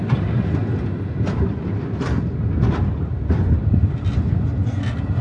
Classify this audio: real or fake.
real